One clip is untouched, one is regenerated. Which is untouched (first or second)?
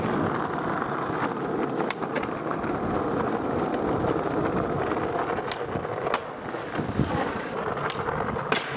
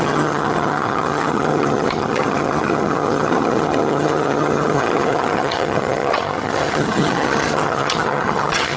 first